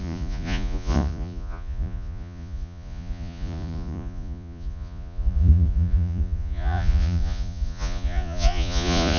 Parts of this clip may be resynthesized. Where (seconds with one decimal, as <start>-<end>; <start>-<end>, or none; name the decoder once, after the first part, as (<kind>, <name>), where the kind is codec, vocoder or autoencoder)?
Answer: 0.0-9.2 (vocoder, Vocos)